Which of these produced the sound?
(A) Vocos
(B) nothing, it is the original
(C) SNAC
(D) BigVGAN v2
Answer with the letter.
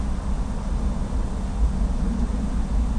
B